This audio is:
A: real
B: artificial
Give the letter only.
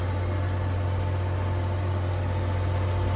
A